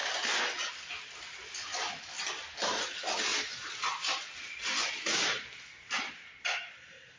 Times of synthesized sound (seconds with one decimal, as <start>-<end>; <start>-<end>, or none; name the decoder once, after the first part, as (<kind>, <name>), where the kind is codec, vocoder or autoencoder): none